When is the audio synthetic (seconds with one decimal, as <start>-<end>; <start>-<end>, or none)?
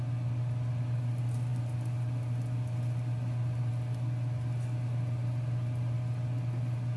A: none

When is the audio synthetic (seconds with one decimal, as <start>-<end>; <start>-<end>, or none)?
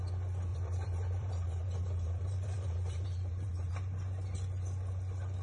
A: 0.5-3.7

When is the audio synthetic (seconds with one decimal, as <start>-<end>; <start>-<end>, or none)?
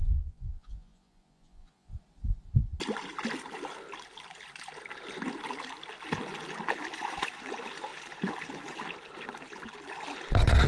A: 0.0-1.9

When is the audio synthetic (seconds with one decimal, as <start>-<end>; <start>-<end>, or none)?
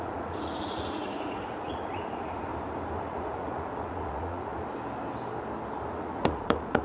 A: 0.0-2.5; 3.0-4.5; 5.9-6.8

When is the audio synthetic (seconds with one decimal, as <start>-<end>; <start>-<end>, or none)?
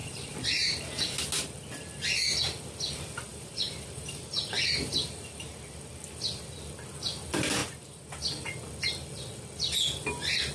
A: 0.0-1.2; 3.3-4.9; 7.6-8.1